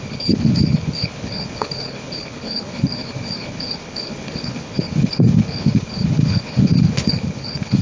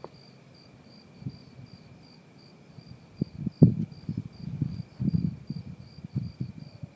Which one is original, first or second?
second